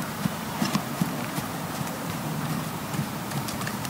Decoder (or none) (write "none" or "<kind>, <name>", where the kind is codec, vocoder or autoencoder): vocoder, BigVGAN v2